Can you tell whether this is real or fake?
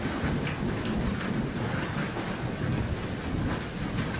real